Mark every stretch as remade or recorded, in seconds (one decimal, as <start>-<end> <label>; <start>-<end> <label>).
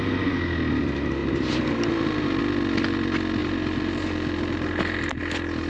0.0-1.2 recorded; 1.2-2.4 remade; 2.4-3.4 recorded; 3.4-5.2 remade; 5.2-5.7 recorded